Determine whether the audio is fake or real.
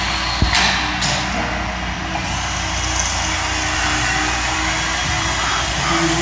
real